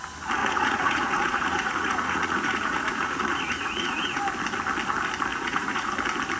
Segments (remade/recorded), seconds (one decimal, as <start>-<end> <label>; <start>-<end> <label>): 0.0-0.4 recorded; 0.4-4.2 remade; 4.2-5.3 recorded; 5.3-5.9 remade; 5.9-6.4 recorded